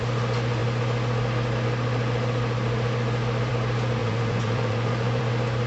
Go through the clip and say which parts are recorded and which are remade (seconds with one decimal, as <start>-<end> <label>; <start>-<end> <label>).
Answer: 0.0-4.0 recorded; 4.0-5.2 remade; 5.2-5.7 recorded